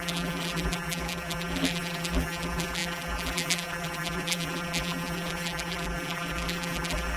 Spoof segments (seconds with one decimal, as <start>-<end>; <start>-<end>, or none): 0.0-7.2